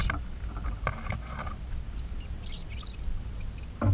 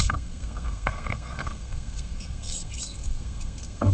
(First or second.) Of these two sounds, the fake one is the second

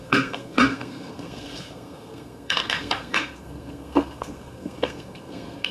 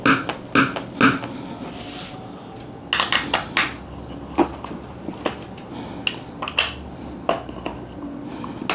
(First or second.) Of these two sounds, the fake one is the first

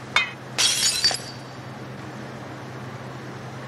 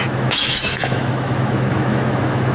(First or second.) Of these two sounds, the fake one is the second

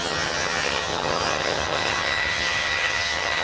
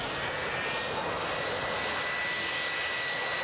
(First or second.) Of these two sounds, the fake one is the first